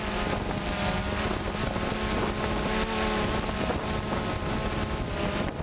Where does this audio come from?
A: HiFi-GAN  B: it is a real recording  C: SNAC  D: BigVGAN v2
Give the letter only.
B